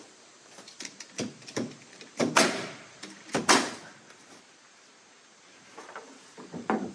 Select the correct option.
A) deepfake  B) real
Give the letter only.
A